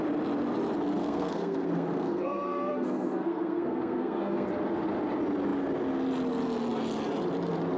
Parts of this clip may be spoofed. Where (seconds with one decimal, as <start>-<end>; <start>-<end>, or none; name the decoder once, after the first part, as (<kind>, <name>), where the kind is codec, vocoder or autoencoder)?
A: 1.0-4.5 (codec, SNAC)